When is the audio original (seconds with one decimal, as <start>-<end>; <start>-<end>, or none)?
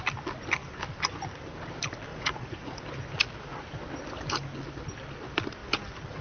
0.0-2.1; 2.8-6.2